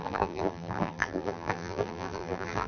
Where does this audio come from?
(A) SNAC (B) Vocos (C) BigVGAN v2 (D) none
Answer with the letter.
C